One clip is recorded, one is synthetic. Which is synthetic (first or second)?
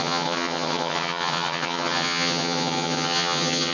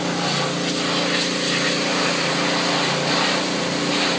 first